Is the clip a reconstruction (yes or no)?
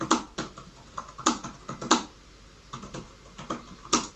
no